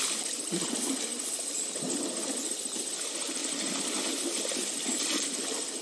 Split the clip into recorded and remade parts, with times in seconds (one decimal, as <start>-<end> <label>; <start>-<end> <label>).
0.0-5.8 recorded